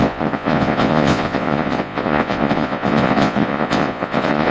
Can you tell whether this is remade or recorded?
remade